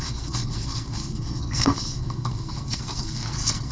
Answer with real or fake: fake